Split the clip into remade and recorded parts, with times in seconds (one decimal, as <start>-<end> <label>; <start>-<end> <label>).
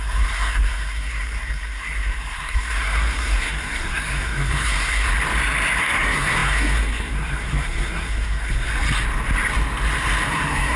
0.0-5.1 remade; 5.1-5.8 recorded; 5.8-8.7 remade; 8.7-10.3 recorded; 10.3-10.8 remade